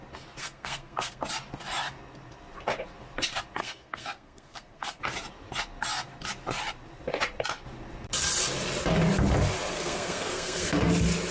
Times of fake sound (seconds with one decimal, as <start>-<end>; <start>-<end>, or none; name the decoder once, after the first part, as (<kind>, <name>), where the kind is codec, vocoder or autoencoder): 0.4-1.2 (codec, SNAC); 3.6-5.0; 9.7-10.7